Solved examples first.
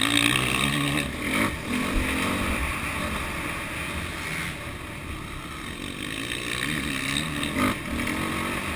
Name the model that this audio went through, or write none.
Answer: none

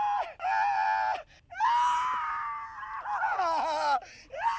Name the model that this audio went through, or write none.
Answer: none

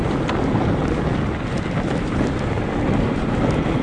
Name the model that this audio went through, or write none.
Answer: none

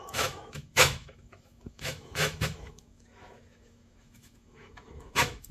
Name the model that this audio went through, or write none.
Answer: autoencoder, DAC-VAE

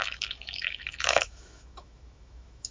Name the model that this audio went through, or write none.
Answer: autoencoder, DAC-VAE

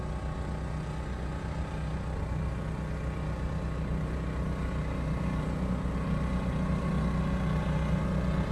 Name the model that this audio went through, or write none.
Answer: none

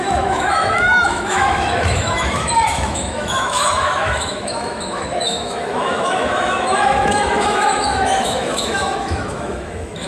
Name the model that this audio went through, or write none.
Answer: autoencoder, DAC-VAE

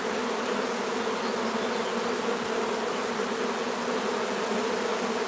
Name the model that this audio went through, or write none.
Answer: none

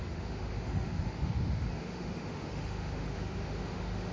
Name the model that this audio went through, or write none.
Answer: autoencoder, DAC-VAE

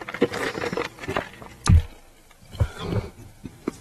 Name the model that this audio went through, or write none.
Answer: none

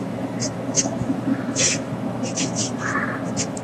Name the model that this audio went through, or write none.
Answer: autoencoder, DAC-VAE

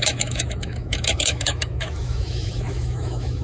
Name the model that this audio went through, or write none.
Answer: autoencoder, DAC-VAE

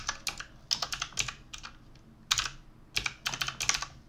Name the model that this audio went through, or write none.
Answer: none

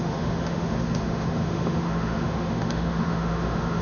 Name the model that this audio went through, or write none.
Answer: autoencoder, DAC-VAE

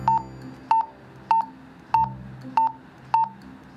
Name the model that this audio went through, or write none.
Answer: none